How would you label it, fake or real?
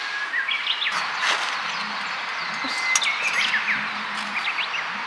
real